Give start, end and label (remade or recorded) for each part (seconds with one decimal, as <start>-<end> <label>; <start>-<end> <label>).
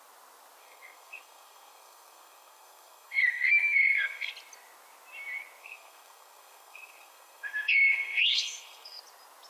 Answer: 0.0-0.6 recorded; 0.6-4.3 remade; 4.3-5.6 recorded; 5.6-9.0 remade; 9.0-9.5 recorded